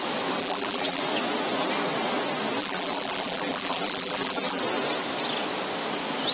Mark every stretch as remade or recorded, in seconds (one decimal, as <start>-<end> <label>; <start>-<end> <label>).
0.0-0.4 recorded; 0.4-1.0 remade; 1.0-2.6 recorded; 2.6-4.6 remade; 4.6-6.3 recorded

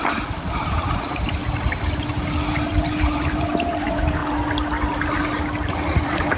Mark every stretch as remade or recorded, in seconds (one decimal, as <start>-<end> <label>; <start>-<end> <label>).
0.0-1.4 remade; 1.4-2.5 recorded; 2.5-4.2 remade; 4.2-6.0 recorded; 6.0-6.4 remade

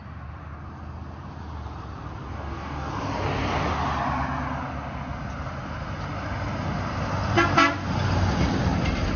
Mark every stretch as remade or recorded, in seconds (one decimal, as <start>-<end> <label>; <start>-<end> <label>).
0.0-2.3 recorded; 2.3-2.9 remade; 2.9-9.2 recorded

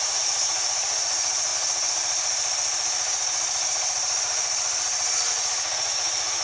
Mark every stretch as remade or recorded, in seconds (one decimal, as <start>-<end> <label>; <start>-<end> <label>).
0.0-1.5 remade; 1.5-5.3 recorded; 5.3-6.4 remade

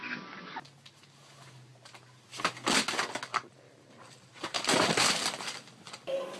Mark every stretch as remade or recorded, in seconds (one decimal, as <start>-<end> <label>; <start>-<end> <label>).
0.0-3.3 recorded; 3.3-5.0 remade; 5.0-6.4 recorded

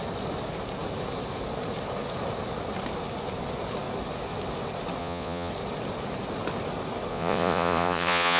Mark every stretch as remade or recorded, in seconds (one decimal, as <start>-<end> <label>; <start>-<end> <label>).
0.0-5.0 recorded; 5.0-5.5 remade; 5.5-7.1 recorded; 7.1-8.4 remade

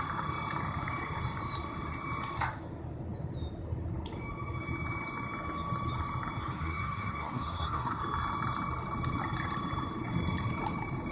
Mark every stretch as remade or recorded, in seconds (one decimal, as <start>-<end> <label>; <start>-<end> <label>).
0.0-6.4 recorded; 6.4-8.0 remade; 8.0-11.1 recorded

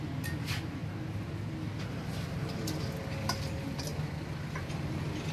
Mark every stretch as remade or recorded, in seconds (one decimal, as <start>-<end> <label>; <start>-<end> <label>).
0.0-5.3 recorded